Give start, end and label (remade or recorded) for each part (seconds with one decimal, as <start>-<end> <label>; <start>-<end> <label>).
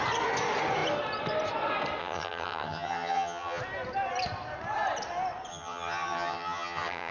0.0-2.0 recorded; 2.0-3.6 remade; 3.6-5.5 recorded; 5.5-7.1 remade